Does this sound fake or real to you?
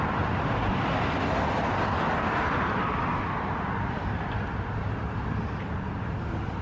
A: real